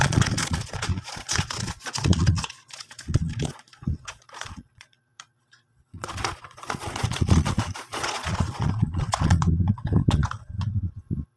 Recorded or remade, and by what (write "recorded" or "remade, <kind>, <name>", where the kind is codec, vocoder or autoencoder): remade, vocoder, Vocos